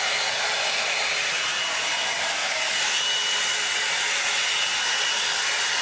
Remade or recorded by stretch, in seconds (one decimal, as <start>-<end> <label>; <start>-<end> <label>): 0.0-5.8 recorded